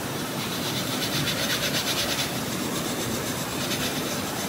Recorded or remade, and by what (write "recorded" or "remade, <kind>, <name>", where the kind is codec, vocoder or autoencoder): remade, vocoder, BigVGAN v2